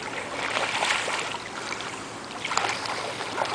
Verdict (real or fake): fake